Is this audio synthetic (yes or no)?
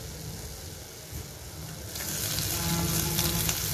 no